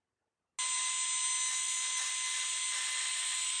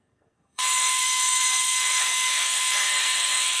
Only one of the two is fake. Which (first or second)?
second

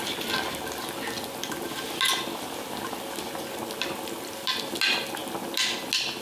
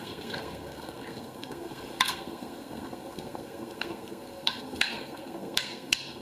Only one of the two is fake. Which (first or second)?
second